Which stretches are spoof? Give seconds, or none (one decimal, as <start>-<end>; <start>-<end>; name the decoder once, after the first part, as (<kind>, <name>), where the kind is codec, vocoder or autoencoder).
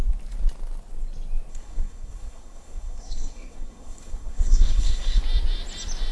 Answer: 1.5-5.2 (codec, SNAC)